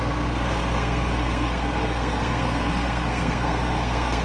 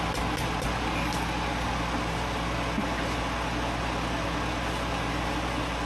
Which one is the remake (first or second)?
first